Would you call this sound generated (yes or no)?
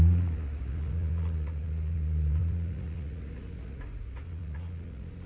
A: yes